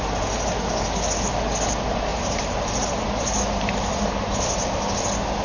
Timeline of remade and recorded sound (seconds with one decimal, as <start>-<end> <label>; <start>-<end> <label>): 0.0-2.1 recorded; 2.1-4.8 remade; 4.8-5.4 recorded